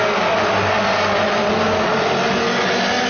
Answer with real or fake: real